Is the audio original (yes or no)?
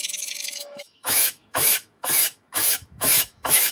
no